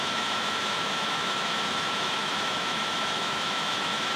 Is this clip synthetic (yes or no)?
yes